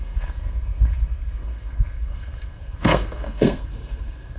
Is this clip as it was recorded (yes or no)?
no